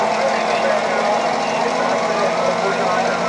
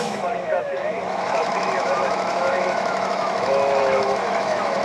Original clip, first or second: first